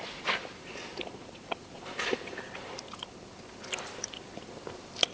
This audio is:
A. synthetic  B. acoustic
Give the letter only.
A